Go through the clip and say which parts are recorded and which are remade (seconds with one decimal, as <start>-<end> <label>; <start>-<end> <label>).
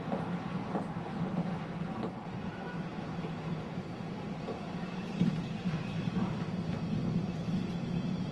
0.0-1.5 remade; 1.5-2.1 recorded; 2.1-2.9 remade; 2.9-3.9 recorded; 3.9-8.3 remade